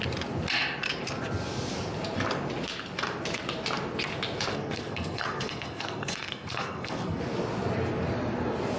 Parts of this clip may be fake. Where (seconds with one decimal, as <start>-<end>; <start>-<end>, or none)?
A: 4.5-7.2